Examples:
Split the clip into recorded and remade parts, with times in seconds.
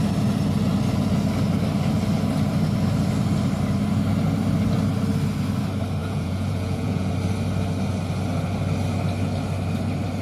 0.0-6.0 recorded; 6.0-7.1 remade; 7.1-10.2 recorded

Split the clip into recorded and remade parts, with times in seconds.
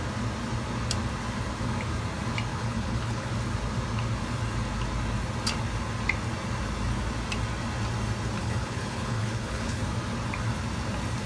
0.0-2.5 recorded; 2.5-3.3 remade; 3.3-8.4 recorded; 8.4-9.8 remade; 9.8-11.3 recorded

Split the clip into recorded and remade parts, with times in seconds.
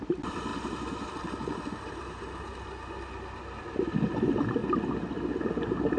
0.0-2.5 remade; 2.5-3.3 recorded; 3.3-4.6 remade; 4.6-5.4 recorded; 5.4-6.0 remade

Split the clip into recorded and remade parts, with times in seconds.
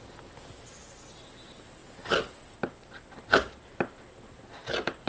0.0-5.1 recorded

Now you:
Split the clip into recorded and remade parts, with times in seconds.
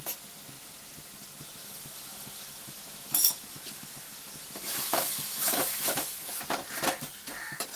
0.0-1.6 recorded; 1.6-6.3 remade; 6.3-7.8 recorded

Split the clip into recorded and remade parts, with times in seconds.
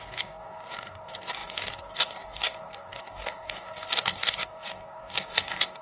0.0-5.8 remade